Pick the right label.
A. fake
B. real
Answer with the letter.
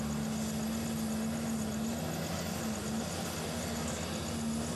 B